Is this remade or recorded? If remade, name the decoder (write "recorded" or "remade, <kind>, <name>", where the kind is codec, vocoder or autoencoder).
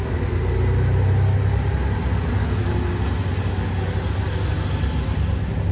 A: recorded